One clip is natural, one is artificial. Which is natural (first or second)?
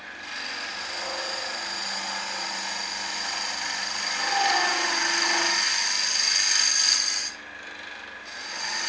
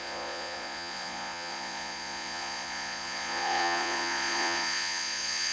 first